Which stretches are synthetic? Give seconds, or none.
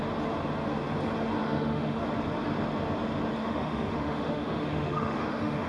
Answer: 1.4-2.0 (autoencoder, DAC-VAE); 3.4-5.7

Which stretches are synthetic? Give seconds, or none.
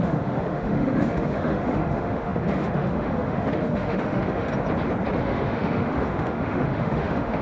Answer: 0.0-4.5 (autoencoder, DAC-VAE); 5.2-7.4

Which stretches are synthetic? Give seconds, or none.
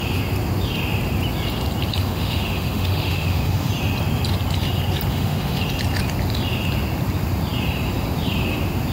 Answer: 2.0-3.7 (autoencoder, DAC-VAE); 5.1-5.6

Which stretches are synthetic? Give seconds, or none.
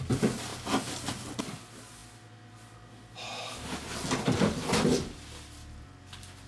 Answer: none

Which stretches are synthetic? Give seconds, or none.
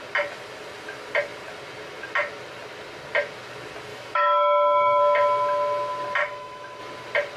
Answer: 3.9-5.0 (autoencoder, DAC-VAE); 6.2-6.8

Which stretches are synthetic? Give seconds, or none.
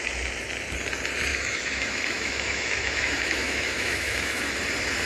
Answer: 1.3-4.4 (autoencoder, DAC-VAE)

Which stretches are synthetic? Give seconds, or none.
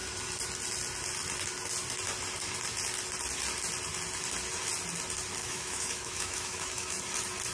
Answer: 5.4-7.0 (autoencoder, DAC-VAE)